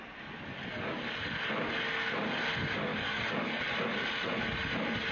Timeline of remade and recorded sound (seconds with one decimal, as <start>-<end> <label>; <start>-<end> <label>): 0.0-2.9 recorded; 2.9-3.6 remade; 3.6-5.1 recorded